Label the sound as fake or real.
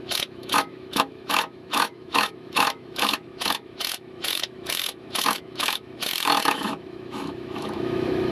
fake